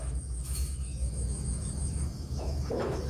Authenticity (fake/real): fake